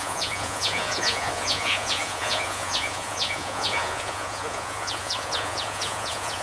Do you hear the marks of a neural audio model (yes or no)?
yes